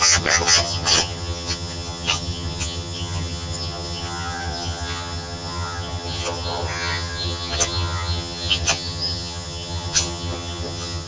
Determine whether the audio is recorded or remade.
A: remade